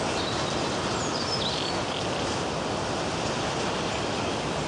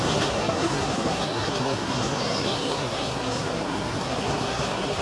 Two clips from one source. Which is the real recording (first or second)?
first